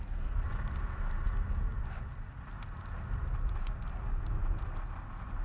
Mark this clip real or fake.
real